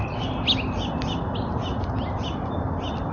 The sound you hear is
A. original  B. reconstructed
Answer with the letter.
A